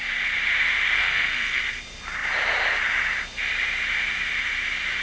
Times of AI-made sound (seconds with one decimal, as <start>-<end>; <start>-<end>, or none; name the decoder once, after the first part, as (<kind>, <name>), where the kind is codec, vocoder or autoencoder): 1.0-1.6 (codec, SNAC)